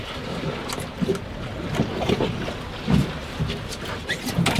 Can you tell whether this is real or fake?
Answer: real